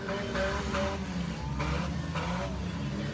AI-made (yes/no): no